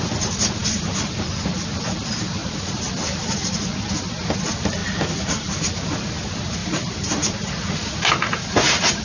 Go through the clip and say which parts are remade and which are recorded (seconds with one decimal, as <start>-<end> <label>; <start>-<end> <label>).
0.0-0.6 recorded; 0.6-1.1 remade; 1.1-4.8 recorded; 4.8-5.6 remade; 5.6-6.6 recorded; 6.6-7.5 remade; 7.5-9.0 recorded